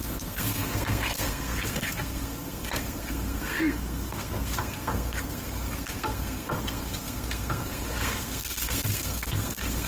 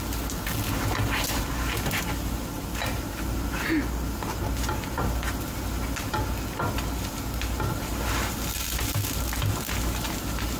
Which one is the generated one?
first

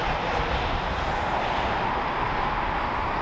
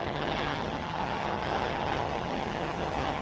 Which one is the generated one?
second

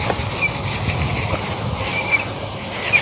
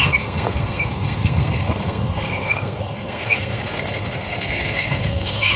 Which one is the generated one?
second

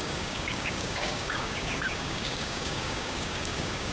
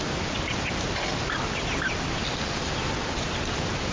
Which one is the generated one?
first